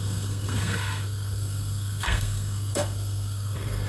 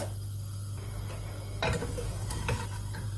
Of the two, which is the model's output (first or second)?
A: first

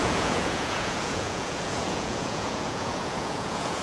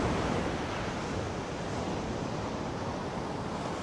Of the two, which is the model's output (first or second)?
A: first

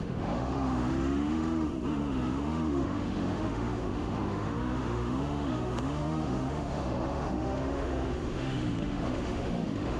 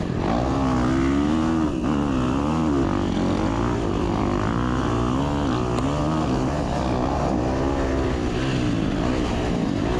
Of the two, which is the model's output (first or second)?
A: first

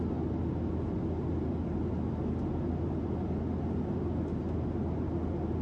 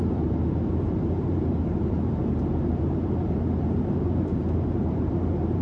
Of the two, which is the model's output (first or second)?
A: second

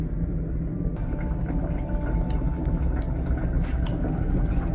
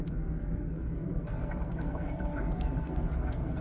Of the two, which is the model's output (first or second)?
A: second